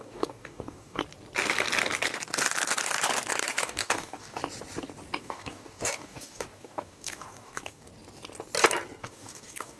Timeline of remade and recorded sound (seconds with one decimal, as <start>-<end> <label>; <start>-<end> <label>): 0.0-1.0 remade; 1.0-3.6 recorded; 3.6-4.4 remade; 4.4-5.2 recorded; 5.2-7.9 remade; 7.9-9.0 recorded; 9.0-9.8 remade